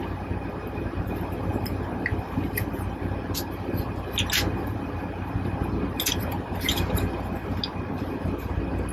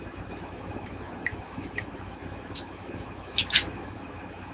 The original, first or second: first